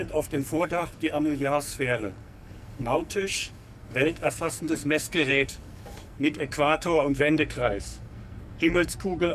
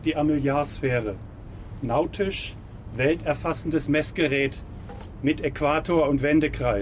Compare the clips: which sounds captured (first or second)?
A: second